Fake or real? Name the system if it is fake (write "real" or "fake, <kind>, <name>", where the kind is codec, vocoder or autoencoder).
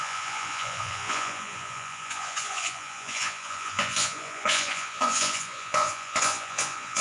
fake, vocoder, Vocos